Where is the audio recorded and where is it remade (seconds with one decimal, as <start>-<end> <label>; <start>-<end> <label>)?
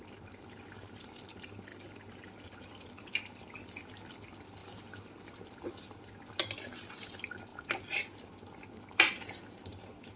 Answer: 0.0-10.2 recorded